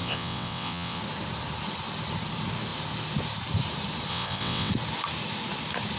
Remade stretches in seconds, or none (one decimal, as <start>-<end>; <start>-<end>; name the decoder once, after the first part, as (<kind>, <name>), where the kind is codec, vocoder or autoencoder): 0.0-1.0 (vocoder, WaveNeXt); 4.1-4.7